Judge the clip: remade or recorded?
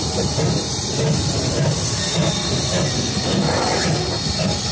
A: recorded